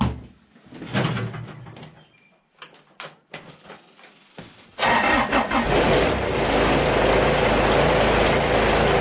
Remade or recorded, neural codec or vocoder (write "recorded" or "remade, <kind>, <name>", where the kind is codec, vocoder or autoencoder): recorded